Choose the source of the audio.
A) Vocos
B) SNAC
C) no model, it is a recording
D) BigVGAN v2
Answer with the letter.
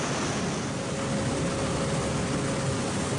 C